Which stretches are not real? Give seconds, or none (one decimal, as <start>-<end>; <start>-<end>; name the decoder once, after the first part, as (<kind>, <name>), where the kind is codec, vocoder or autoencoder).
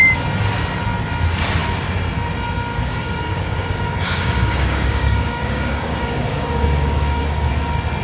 2.7-7.5 (codec, DAC)